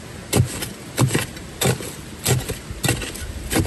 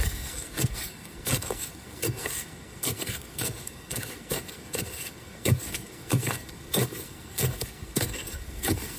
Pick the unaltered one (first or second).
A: first